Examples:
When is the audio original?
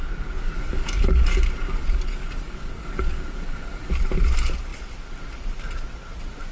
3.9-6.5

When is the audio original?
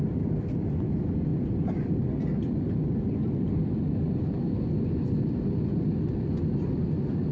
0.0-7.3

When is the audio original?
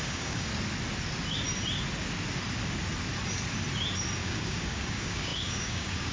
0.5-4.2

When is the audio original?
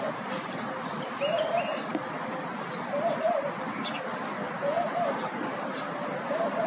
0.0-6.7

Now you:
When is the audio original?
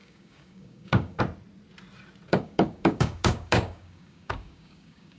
1.2-2.3